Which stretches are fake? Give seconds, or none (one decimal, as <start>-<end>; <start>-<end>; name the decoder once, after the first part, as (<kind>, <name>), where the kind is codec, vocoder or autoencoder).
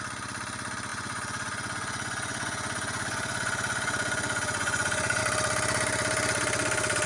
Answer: 0.9-5.2 (vocoder, Vocos)